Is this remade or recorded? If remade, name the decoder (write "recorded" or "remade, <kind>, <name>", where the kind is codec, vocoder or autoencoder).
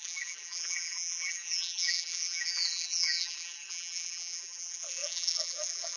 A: remade, vocoder, BigVGAN v2